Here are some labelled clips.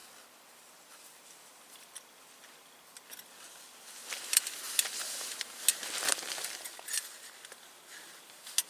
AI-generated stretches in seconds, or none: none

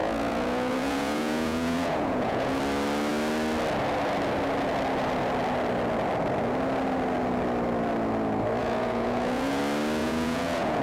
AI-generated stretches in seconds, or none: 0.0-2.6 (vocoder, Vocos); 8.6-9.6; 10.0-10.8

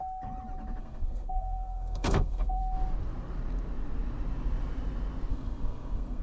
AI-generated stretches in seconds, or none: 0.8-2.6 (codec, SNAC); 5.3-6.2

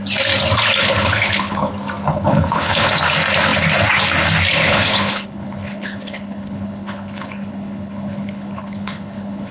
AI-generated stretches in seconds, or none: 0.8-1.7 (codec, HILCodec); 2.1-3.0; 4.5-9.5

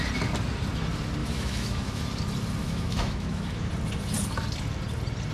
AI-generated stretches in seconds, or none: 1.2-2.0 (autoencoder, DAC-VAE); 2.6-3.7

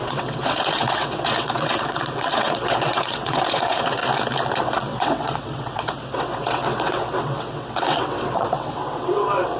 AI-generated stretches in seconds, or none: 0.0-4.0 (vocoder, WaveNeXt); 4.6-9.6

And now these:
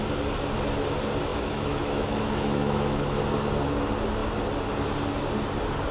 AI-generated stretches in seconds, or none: 1.3-3.2 (autoencoder, DAC-VAE)

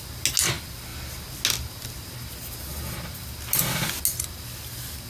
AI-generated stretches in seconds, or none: none